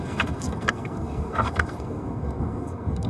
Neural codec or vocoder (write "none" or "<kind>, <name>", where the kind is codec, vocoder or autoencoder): codec, SNAC